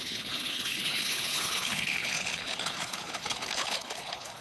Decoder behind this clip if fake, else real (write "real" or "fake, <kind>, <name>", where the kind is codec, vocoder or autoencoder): fake, codec, HILCodec